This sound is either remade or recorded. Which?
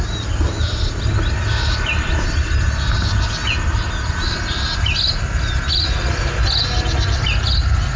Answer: recorded